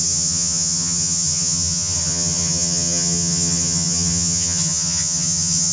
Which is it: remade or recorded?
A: remade